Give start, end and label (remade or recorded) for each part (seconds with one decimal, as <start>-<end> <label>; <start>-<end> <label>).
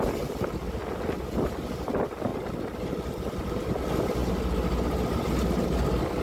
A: 0.0-6.2 recorded